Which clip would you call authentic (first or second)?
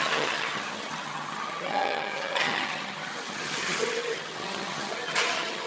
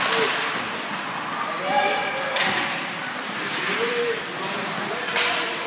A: second